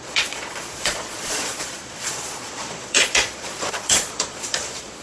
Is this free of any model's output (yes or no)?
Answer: no